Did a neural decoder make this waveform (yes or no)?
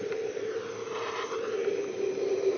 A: no